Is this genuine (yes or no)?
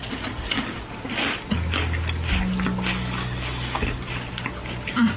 yes